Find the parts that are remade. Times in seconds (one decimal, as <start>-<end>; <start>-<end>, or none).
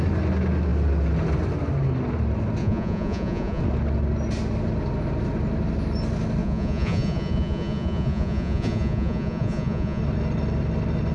2.6-3.6; 6.4-10.0